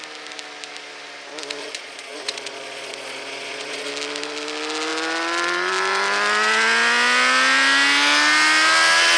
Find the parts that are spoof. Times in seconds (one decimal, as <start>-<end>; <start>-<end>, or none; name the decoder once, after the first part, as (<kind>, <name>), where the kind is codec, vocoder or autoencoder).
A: 1.6-3.9 (vocoder, Vocos)